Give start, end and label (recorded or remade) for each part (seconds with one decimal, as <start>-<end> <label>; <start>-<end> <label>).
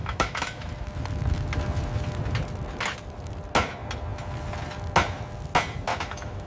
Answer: 0.0-0.7 remade; 0.7-5.9 recorded; 5.9-6.5 remade